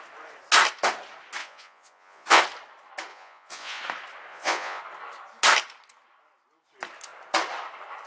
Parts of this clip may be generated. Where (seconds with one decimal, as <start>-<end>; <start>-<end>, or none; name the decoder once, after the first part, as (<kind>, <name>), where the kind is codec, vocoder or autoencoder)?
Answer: 1.4-2.4 (vocoder, Vocos); 3.1-3.8; 4.3-4.8